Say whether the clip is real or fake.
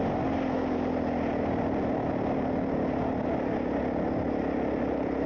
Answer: real